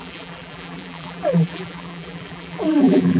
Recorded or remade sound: remade